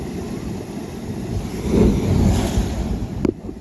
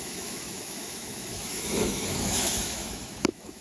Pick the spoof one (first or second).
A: second